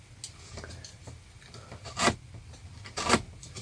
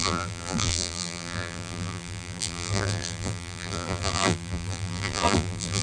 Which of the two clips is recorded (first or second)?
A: first